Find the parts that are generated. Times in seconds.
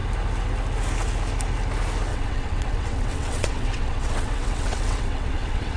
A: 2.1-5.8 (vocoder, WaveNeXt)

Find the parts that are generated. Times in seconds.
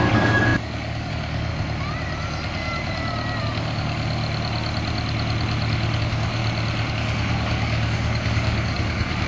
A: 0.0-1.5 (codec, DAC); 3.4-4.2; 6.0-6.4; 6.9-9.3